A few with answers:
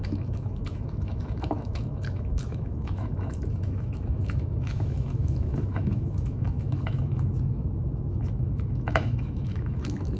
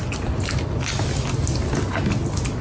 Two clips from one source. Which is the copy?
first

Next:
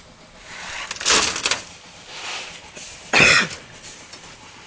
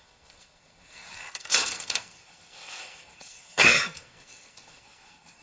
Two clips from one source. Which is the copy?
second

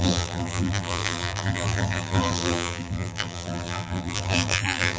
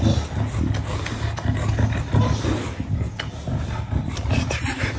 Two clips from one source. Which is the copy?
first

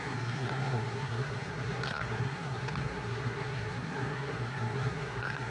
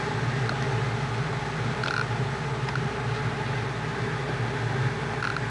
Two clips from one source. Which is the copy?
first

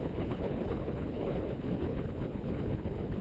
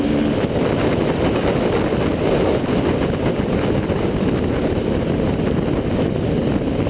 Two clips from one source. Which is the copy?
first